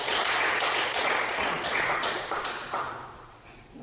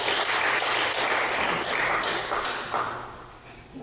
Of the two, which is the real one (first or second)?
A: second